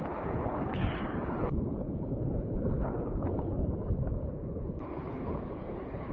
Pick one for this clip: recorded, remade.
remade